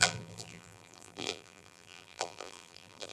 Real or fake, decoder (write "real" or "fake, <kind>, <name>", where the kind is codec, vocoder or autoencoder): fake, vocoder, BigVGAN v2